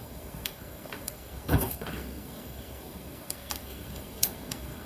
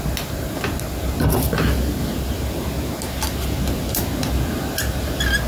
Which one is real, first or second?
second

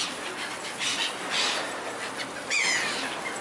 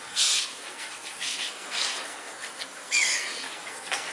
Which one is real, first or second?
first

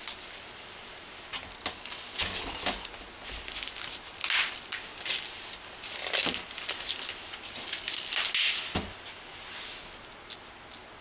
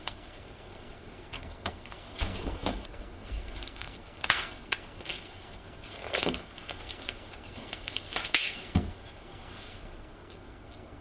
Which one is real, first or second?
first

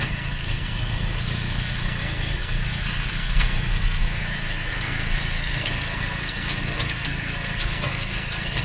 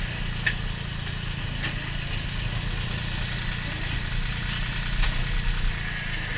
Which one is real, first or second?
second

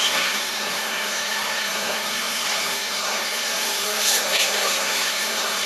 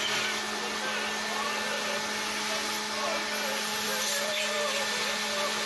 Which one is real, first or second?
second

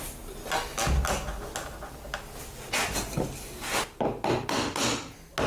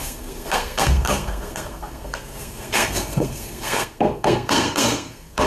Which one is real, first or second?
first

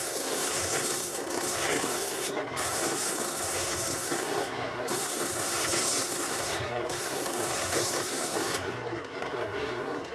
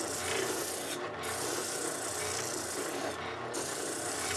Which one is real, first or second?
second